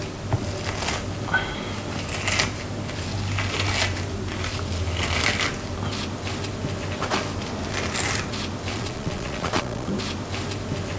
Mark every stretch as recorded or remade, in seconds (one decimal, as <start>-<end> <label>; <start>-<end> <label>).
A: 0.0-8.7 recorded; 8.7-9.9 remade; 9.9-11.0 recorded